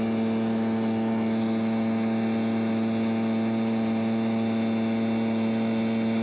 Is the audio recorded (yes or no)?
yes